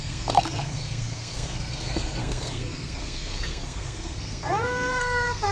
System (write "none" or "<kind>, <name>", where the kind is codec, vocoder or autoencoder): codec, SNAC